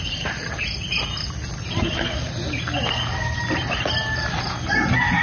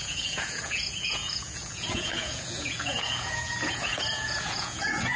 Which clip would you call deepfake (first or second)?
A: second